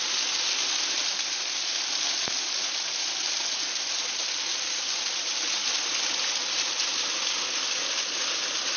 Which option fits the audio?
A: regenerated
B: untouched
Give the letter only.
B